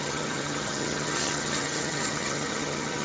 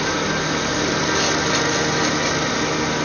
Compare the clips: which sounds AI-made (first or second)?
first